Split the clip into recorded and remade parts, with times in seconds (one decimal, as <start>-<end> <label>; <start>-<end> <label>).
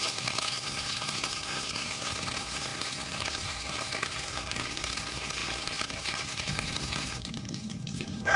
0.0-8.4 remade